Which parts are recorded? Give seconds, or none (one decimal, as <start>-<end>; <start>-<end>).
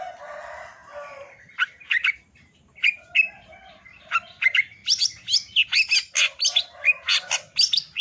0.0-8.0